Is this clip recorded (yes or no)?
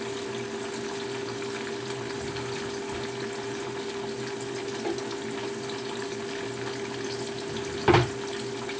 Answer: yes